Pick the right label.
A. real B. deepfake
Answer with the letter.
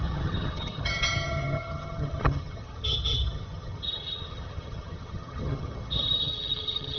B